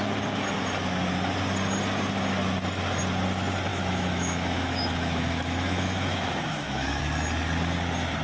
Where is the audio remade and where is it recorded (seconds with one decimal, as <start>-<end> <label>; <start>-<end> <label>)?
0.0-3.7 recorded; 3.7-7.0 remade; 7.0-8.2 recorded